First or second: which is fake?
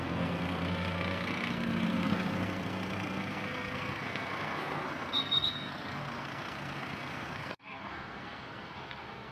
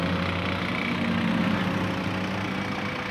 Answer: first